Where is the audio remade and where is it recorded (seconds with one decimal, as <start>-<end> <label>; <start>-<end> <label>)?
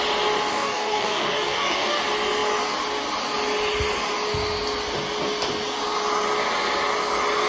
0.0-0.5 recorded; 0.5-2.0 remade; 2.0-7.5 recorded